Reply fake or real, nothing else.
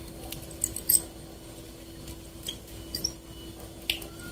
real